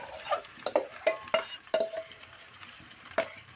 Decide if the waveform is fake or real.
fake